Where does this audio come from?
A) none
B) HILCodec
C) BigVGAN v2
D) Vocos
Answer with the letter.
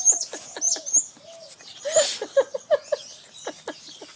A